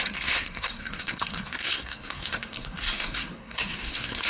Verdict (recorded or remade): remade